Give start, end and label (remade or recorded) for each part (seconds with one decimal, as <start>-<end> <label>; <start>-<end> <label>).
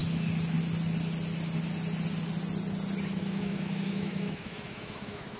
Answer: 0.0-3.2 recorded; 3.2-5.4 remade